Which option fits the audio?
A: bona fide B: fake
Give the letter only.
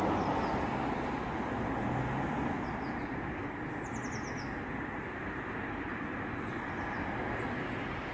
A